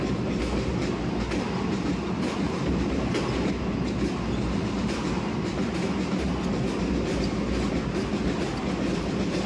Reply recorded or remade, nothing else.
recorded